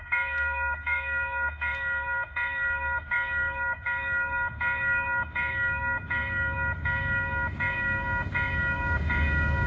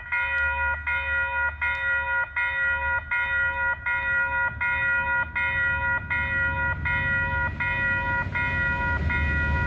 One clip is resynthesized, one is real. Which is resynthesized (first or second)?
first